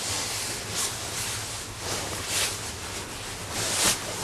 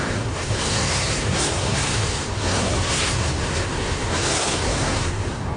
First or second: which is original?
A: first